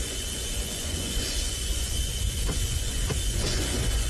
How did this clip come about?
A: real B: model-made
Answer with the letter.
B